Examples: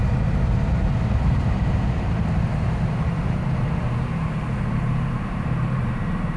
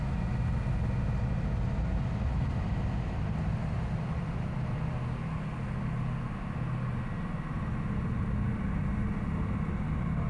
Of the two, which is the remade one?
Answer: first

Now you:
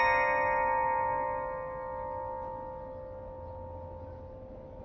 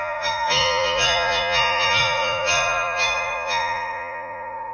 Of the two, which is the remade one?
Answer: second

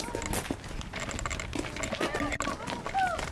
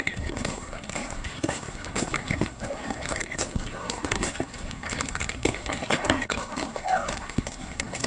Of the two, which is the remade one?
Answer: second